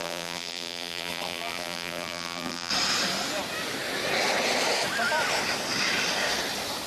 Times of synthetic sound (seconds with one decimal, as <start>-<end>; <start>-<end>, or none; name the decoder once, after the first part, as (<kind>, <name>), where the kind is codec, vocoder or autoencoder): 0.0-2.7 (vocoder, BigVGAN v2)